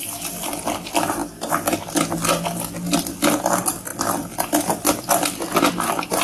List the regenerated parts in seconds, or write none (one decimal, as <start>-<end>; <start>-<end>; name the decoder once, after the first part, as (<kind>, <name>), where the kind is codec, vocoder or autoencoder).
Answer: none